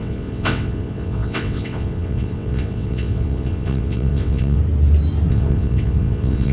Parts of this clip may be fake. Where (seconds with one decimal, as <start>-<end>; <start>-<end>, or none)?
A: 0.0-4.6; 5.3-6.5